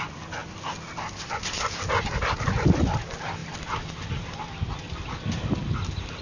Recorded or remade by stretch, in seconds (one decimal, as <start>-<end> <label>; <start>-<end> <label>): 0.0-3.4 recorded; 3.4-4.4 remade; 4.4-6.2 recorded